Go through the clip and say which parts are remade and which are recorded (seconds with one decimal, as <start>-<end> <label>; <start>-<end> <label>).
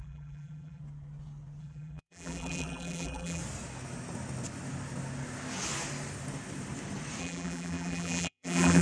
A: 0.0-0.8 remade; 0.8-1.6 recorded; 1.6-3.4 remade; 3.4-7.2 recorded; 7.2-8.8 remade